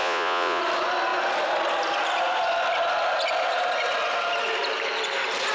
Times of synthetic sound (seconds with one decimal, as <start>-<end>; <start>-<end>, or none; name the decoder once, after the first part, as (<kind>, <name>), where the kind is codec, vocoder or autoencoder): 0.0-0.6 (vocoder, Vocos)